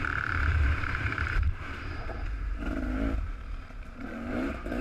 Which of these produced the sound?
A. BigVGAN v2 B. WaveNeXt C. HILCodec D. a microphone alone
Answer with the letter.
A